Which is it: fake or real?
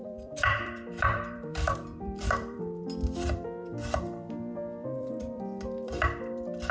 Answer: fake